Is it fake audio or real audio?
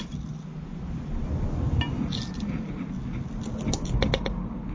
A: real